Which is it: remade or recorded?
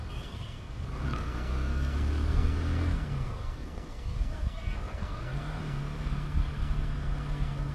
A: remade